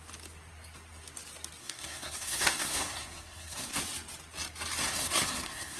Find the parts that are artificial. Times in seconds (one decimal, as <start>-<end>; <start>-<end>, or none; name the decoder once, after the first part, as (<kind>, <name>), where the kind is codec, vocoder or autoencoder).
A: 1.6-3.8 (codec, SNAC); 4.8-5.8